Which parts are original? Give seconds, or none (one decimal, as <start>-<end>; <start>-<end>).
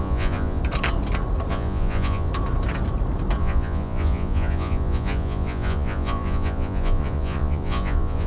0.6-1.5; 2.3-3.4